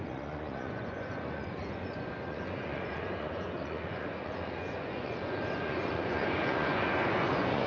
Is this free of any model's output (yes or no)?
no